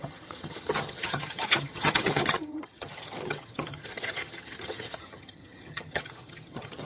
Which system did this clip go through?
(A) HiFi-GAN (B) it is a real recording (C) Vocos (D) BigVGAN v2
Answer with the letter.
A